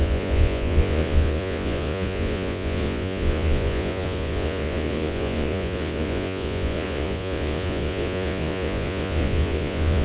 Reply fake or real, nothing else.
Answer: fake